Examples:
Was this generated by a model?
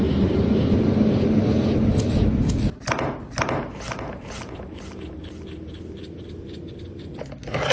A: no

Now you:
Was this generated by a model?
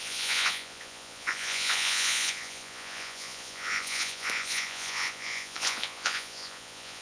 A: yes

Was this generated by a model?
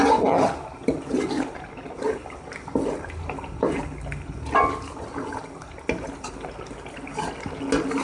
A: no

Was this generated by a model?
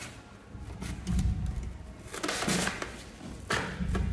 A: no